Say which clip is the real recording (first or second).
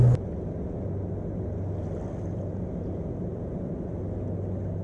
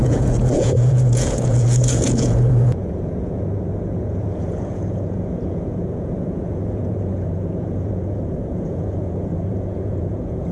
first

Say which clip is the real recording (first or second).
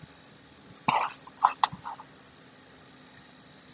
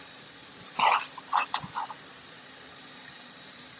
first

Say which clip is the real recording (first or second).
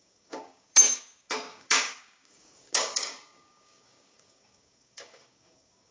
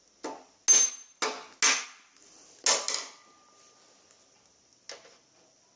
second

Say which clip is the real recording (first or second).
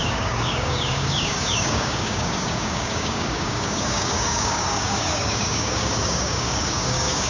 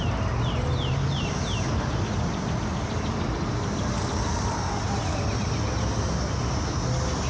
second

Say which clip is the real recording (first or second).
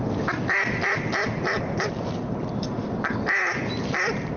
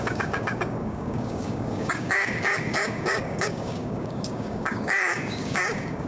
first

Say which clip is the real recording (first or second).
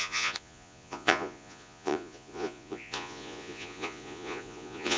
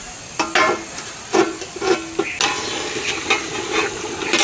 second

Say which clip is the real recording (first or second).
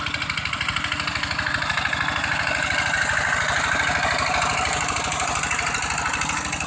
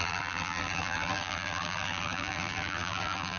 first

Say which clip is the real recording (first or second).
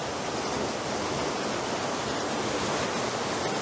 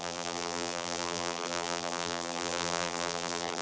first